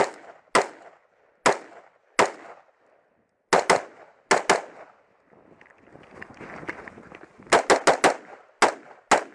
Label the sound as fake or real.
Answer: real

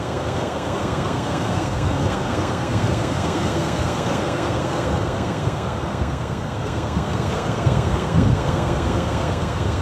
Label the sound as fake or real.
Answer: fake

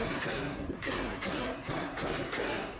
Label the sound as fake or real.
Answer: fake